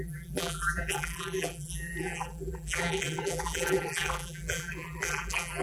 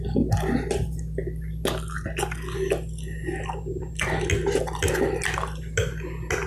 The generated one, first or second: first